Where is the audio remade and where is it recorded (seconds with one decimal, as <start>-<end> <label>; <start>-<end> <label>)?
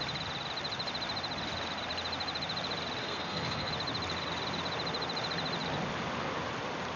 0.0-3.0 recorded; 3.0-3.7 remade; 3.7-7.0 recorded